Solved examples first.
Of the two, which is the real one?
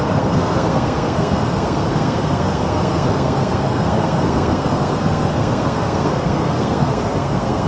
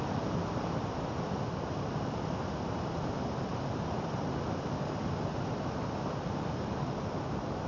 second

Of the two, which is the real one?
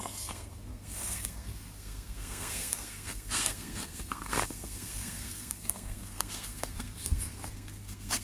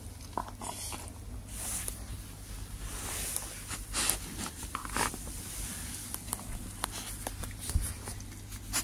second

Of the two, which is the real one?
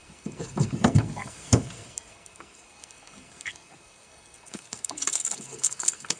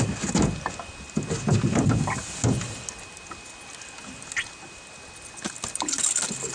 second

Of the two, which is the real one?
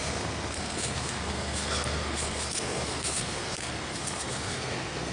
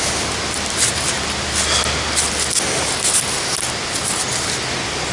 second